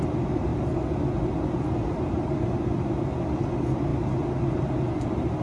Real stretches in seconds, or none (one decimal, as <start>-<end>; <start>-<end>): 0.0-5.4